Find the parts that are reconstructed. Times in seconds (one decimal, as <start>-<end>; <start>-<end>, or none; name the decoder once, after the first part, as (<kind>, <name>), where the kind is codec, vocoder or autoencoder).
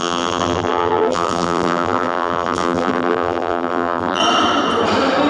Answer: 0.0-4.2 (vocoder, BigVGAN v2)